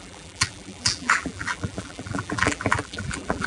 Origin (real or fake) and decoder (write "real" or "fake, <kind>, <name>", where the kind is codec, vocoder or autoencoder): fake, vocoder, BigVGAN v2